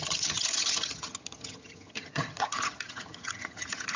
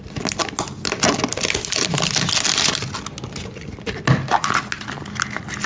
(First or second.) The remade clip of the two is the first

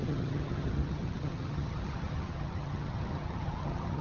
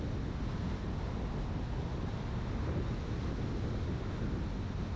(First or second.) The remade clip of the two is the first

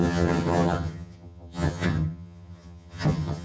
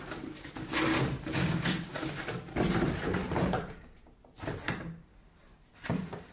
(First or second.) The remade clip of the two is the first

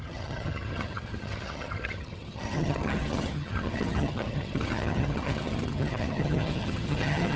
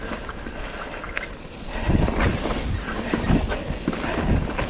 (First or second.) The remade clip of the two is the first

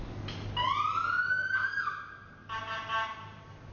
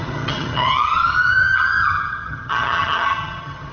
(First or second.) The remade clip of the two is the second